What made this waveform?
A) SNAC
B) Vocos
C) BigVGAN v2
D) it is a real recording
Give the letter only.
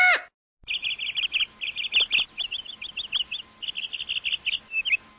D